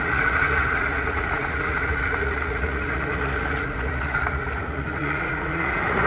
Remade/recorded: remade